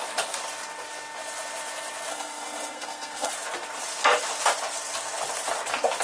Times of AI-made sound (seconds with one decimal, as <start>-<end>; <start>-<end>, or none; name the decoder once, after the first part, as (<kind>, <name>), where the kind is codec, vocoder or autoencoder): 2.1-3.3 (codec, SNAC)